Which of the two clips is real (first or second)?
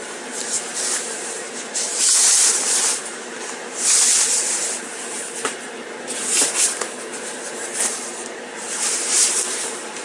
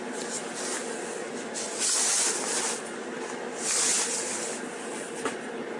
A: second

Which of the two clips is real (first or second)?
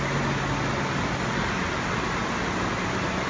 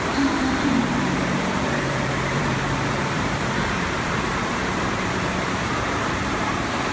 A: first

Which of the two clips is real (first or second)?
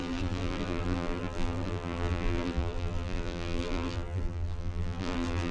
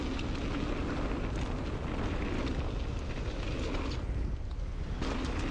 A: second